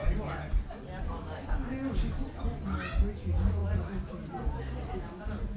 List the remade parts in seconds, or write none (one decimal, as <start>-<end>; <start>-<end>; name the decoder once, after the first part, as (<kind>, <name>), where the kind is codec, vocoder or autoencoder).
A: none